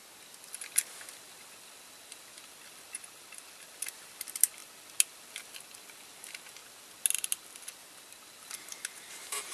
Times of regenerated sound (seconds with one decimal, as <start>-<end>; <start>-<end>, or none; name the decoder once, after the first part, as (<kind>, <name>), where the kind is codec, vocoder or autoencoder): none